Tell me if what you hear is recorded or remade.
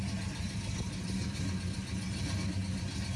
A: recorded